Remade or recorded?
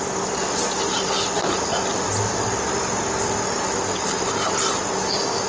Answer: recorded